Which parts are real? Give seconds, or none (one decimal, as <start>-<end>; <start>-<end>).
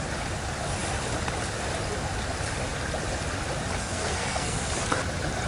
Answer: 0.0-3.8; 4.7-5.5